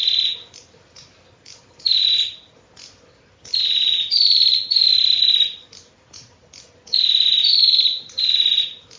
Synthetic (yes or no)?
no